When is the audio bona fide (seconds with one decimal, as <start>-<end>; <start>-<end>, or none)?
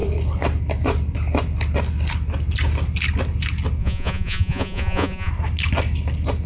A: 0.0-3.8; 5.3-6.5